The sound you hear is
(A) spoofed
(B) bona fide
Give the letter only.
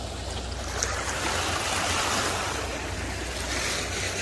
B